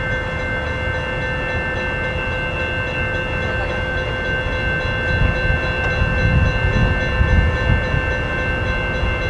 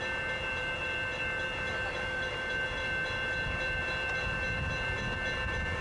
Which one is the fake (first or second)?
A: second